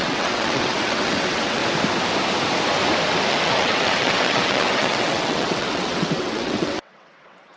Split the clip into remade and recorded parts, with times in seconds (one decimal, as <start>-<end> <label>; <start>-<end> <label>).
0.0-1.6 remade; 1.6-3.3 recorded; 3.3-7.6 remade